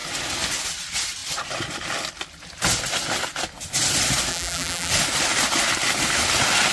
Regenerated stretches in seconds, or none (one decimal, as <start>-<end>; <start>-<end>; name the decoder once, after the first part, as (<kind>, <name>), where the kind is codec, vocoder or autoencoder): 4.3-4.9 (vocoder, BigVGAN v2)